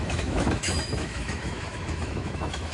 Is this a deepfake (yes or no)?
yes